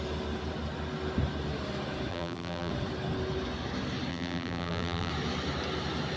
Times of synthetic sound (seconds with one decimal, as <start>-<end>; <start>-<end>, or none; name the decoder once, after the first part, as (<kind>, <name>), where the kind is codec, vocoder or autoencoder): 2.1-2.7 (vocoder, BigVGAN v2); 4.1-5.1